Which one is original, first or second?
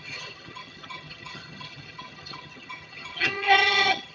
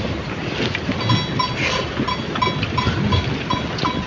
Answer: second